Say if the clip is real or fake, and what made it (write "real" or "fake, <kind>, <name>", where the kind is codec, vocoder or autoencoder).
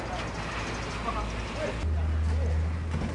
real